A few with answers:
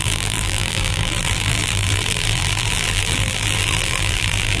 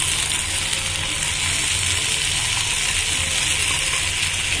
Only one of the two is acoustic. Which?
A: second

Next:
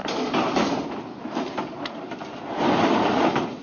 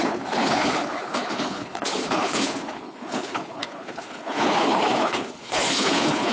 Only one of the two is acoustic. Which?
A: first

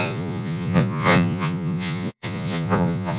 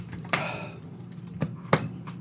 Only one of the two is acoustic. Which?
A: second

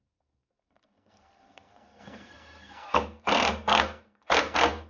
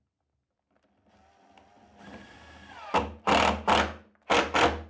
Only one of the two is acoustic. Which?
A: second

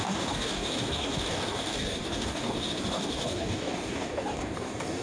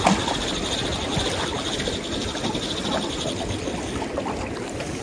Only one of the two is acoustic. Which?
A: second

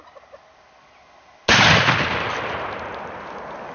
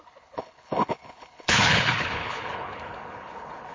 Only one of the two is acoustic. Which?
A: first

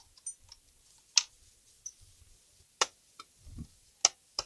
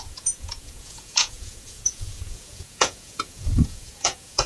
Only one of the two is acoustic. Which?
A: first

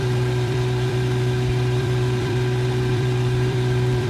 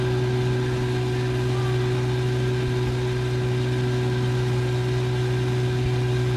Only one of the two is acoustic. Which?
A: second